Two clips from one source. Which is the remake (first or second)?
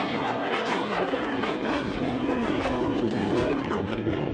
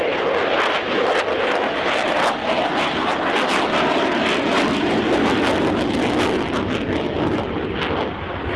first